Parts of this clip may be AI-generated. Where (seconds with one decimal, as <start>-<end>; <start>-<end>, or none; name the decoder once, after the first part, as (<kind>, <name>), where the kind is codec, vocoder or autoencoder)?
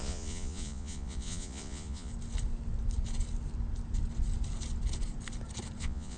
0.0-2.1 (vocoder, Vocos); 5.8-6.2